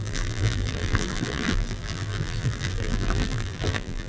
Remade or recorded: remade